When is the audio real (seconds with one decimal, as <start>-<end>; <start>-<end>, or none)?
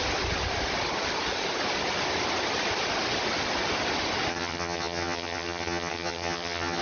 0.0-4.3